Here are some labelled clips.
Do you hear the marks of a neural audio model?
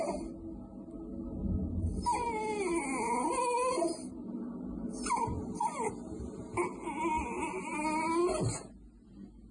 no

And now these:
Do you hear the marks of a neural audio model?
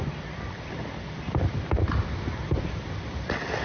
yes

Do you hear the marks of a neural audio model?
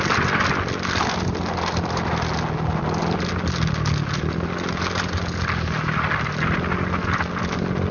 no